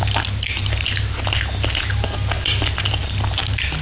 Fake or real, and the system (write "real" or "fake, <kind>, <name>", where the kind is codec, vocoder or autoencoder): real